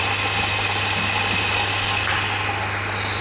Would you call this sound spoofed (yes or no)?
no